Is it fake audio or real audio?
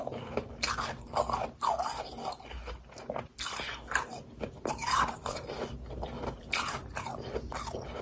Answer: real